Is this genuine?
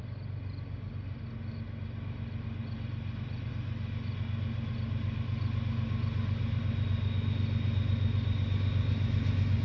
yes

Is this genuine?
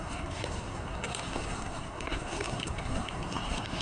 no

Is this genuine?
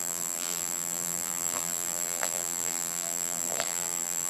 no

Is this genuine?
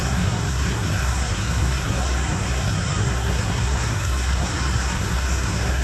no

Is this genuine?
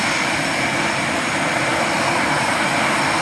no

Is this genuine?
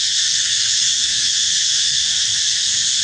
no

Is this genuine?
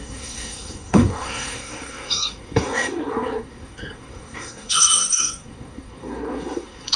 no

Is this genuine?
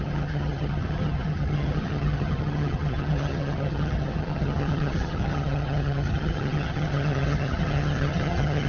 no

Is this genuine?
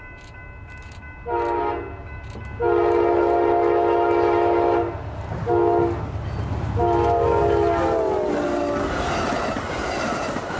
yes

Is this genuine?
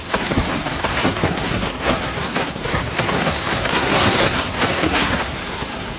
no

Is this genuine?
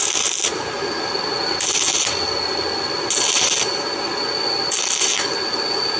yes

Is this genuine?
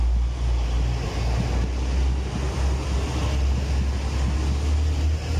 yes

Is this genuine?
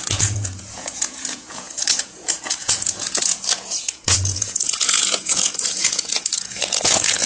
no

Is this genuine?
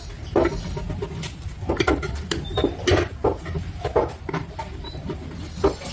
yes